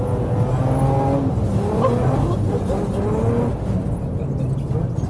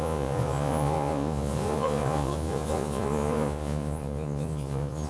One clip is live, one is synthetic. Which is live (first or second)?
first